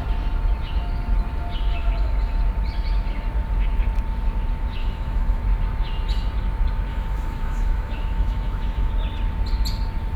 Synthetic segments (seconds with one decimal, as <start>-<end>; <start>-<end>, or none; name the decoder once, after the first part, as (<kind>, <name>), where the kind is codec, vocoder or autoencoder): 4.8-5.4 (autoencoder, DAC-VAE); 6.9-8.9